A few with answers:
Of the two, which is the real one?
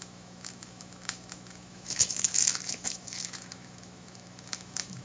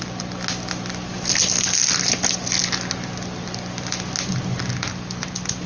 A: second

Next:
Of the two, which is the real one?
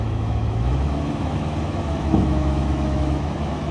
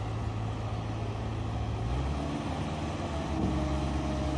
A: second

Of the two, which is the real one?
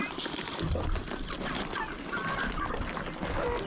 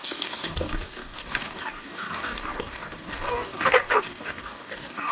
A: first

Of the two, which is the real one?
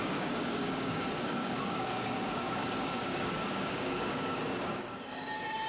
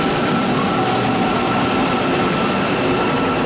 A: second